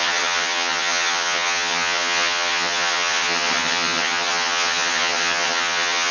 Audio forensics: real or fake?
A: fake